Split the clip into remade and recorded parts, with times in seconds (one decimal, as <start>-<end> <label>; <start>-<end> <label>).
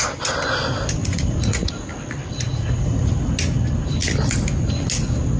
0.0-1.0 recorded; 1.0-1.9 remade; 1.9-2.5 recorded; 2.5-3.1 remade; 3.1-5.4 recorded